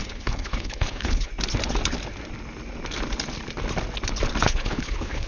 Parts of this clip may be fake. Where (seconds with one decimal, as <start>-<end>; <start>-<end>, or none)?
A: 0.0-1.3; 4.4-5.3